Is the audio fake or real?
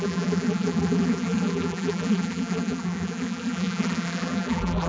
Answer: fake